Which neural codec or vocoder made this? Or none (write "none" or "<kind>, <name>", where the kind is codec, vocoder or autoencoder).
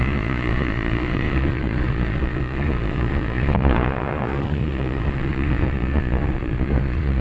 vocoder, Vocos